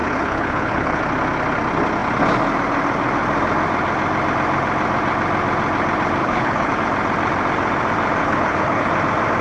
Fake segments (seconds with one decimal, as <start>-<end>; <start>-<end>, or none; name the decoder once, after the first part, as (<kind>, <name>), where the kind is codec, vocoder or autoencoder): 0.0-1.0 (codec, HILCodec); 6.2-6.7; 8.2-8.9